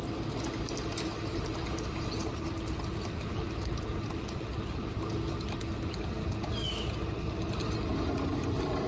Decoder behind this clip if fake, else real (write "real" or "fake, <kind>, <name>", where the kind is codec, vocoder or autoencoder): real